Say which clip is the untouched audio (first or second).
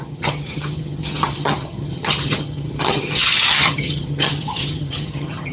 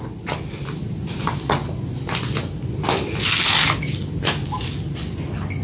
second